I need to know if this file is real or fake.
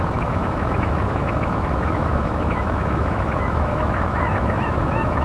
fake